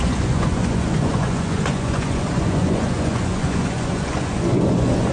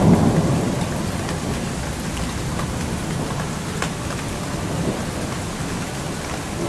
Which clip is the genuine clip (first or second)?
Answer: second